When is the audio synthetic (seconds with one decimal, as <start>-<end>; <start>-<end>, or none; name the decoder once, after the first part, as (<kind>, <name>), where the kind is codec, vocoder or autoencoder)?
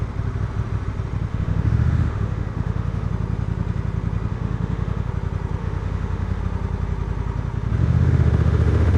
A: 1.3-3.1 (autoencoder, DAC-VAE); 4.3-5.1; 5.6-6.4; 7.8-9.0